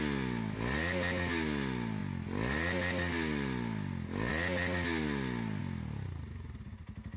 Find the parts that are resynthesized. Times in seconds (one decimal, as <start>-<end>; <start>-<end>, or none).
none